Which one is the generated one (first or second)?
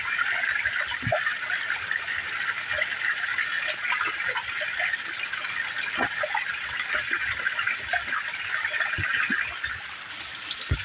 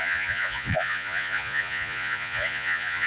second